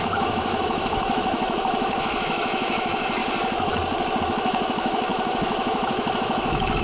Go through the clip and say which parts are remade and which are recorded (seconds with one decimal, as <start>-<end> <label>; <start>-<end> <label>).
0.0-3.2 remade; 3.2-4.2 recorded; 4.2-6.8 remade